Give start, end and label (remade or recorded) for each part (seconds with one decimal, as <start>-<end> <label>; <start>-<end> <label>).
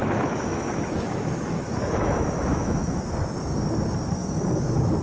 0.0-3.0 remade; 3.0-5.0 recorded